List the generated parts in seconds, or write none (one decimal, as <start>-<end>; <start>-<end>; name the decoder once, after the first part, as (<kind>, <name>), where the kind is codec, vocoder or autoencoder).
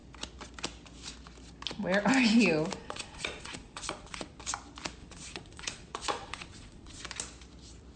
2.8-4.4 (vocoder, Vocos); 5.0-7.0